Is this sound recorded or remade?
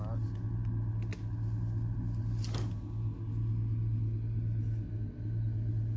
recorded